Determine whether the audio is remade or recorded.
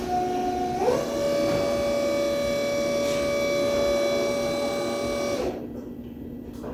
recorded